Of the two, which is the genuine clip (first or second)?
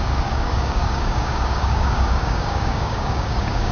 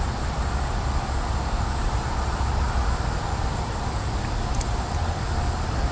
second